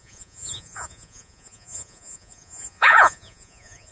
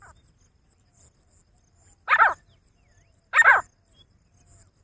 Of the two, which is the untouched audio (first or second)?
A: second